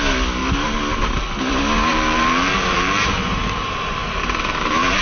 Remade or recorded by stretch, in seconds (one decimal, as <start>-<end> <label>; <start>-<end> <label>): 0.0-1.9 recorded; 1.9-5.0 remade